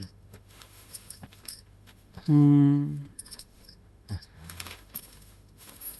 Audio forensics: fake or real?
fake